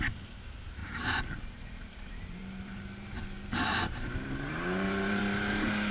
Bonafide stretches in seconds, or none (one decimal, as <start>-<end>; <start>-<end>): 0.0-0.8; 1.5-2.1; 2.8-3.5; 5.2-5.9